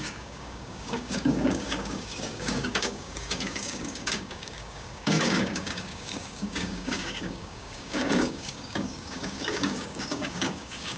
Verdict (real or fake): fake